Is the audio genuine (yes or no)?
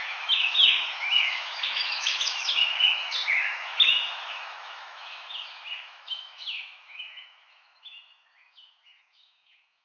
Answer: no